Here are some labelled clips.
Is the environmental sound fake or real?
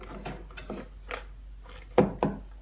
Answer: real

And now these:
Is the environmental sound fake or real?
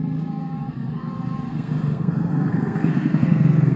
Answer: fake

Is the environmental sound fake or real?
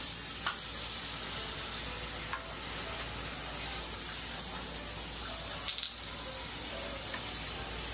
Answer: real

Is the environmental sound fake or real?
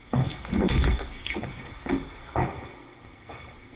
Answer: fake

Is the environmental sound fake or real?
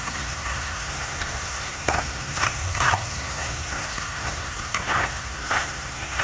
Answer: fake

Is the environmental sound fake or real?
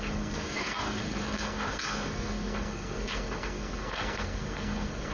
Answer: fake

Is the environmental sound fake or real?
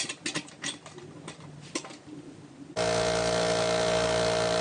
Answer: real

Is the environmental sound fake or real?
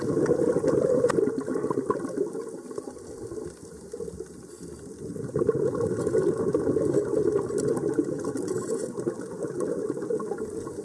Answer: real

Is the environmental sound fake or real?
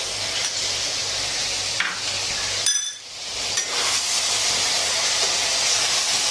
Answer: real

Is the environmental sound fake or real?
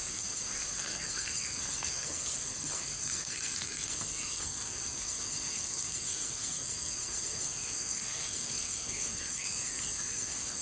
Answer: fake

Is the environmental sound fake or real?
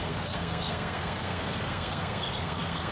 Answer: fake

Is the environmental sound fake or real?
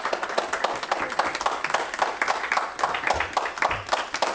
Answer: real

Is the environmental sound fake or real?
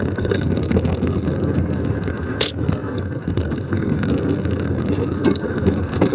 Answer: fake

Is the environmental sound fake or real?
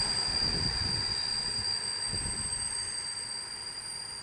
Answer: real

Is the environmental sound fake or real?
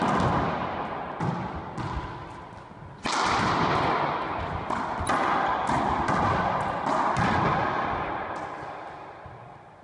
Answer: real